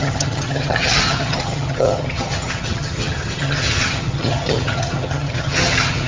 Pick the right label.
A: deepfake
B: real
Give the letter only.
A